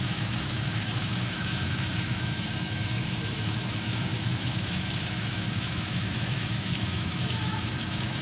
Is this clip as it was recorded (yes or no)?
no